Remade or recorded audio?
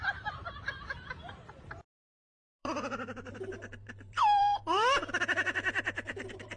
remade